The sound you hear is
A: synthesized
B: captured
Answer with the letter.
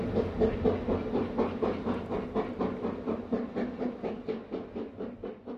B